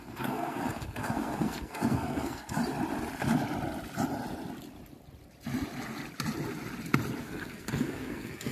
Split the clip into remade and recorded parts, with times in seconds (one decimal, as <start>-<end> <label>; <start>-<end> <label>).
0.0-2.6 remade; 2.6-7.2 recorded; 7.2-8.5 remade